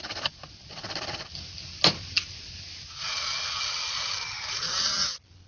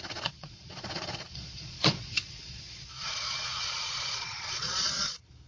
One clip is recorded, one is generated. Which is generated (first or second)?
second